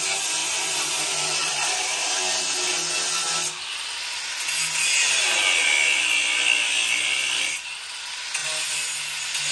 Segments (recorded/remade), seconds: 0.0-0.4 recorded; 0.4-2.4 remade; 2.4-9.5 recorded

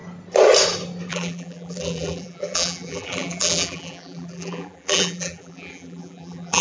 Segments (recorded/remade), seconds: 0.0-1.1 recorded; 1.1-6.6 remade

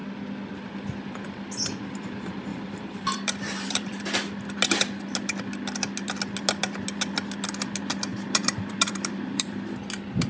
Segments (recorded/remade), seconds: 0.0-2.5 recorded; 2.5-3.9 remade; 3.9-8.1 recorded; 8.1-9.7 remade; 9.7-10.3 recorded

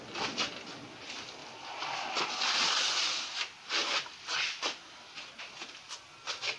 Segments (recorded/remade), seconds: 0.0-6.6 recorded

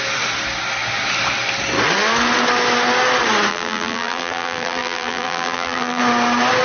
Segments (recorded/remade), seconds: 0.0-3.5 recorded; 3.5-6.0 remade; 6.0-6.6 recorded